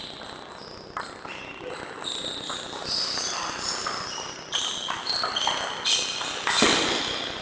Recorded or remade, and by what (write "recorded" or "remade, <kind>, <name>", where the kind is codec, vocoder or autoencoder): recorded